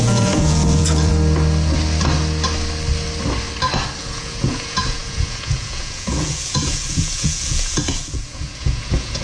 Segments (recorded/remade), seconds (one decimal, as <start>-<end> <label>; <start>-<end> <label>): 0.0-1.1 remade; 1.1-4.0 recorded; 4.0-9.2 remade